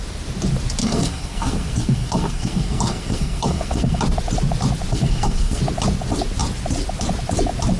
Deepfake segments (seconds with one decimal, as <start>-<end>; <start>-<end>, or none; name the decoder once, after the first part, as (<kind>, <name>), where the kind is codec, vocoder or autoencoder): 0.8-4.0 (codec, SNAC); 4.9-5.6

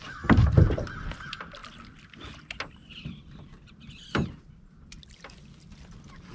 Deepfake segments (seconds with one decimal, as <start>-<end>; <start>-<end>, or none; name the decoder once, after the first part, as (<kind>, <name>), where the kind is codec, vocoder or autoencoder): none

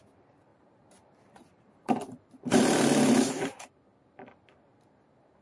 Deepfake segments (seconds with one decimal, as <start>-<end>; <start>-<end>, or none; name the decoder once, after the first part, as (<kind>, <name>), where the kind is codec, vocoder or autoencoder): 0.5-3.7 (vocoder, BigVGAN v2)

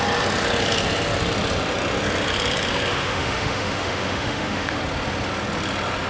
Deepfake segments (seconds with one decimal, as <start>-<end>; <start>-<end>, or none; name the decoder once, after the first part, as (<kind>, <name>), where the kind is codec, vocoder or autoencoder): 2.9-4.8 (autoencoder, DAC-VAE)

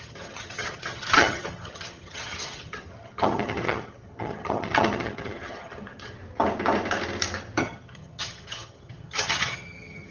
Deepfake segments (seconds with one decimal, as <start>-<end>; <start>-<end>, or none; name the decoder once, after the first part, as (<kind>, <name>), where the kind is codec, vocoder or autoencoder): 0.0-6.2 (vocoder, HiFi-GAN); 7.6-10.1

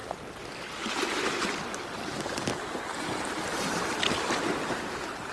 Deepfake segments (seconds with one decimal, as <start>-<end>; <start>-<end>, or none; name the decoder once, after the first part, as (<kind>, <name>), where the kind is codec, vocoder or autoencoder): none